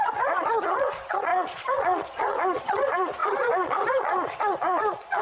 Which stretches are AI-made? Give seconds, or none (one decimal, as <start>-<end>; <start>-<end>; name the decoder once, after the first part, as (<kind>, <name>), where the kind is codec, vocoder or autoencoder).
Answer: 0.0-5.2 (vocoder, Vocos)